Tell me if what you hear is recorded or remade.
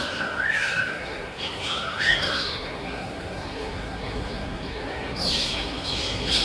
remade